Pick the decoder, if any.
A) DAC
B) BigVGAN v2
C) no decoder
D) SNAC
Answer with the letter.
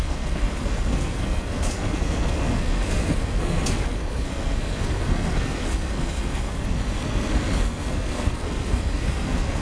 D